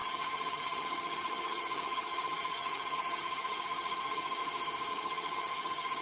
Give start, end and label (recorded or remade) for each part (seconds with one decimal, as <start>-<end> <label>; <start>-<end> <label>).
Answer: 0.0-4.4 remade; 4.4-4.9 recorded; 4.9-6.0 remade